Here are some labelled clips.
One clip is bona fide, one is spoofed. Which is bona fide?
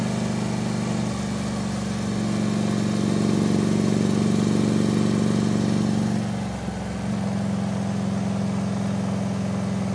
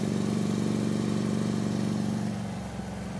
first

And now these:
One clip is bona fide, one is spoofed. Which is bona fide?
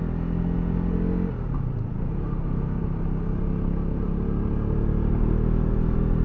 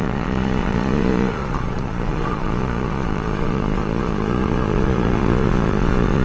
first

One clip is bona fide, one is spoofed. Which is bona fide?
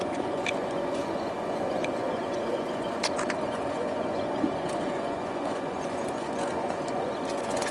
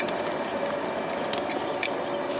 second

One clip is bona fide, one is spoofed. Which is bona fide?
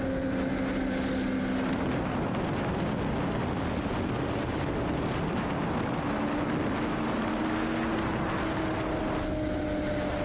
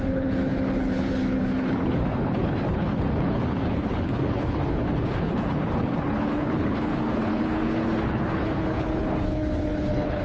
first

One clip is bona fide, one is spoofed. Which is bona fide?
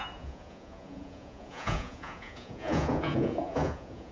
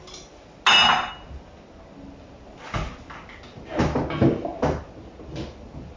second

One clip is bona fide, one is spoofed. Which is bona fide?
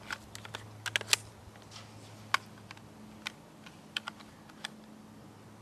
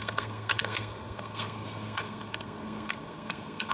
first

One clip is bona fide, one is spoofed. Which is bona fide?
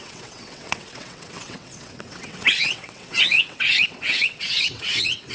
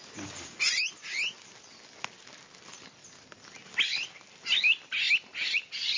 second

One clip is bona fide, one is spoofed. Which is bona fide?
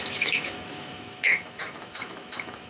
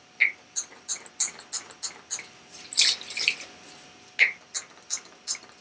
second